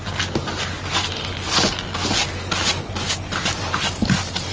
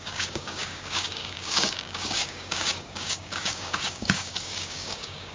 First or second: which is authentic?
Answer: first